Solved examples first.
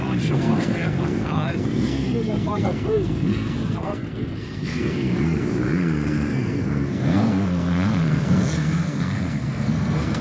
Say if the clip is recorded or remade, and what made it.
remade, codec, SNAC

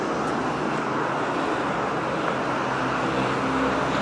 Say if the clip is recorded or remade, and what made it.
recorded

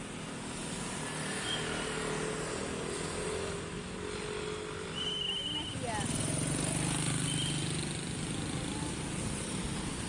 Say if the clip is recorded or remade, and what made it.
recorded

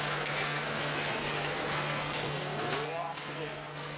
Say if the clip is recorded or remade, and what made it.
remade, codec, SNAC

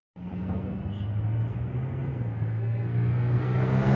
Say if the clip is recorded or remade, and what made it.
remade, codec, SNAC